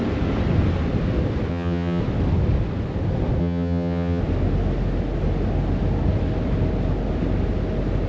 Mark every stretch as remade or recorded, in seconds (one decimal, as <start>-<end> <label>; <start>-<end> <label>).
0.0-1.5 recorded; 1.5-2.0 remade; 2.0-3.4 recorded; 3.4-4.2 remade; 4.2-8.1 recorded